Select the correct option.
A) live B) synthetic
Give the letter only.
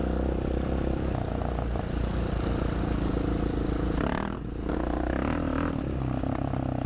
A